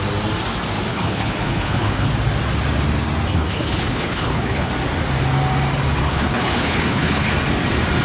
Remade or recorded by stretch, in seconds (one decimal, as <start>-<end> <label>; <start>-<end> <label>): 0.0-0.9 recorded; 0.9-2.1 remade; 2.1-3.3 recorded; 3.3-4.7 remade; 4.7-6.0 recorded; 6.0-7.3 remade; 7.3-8.0 recorded